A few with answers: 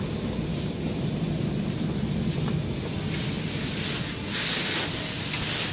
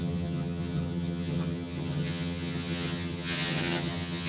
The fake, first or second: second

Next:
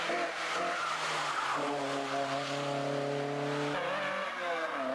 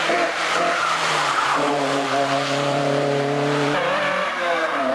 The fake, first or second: second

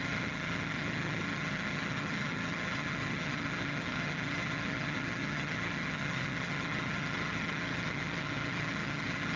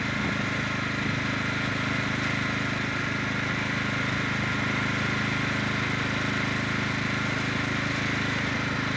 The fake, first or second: first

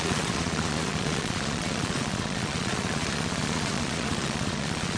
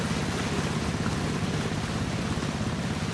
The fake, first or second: first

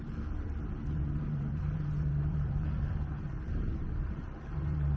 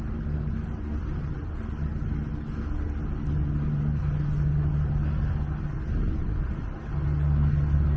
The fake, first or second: first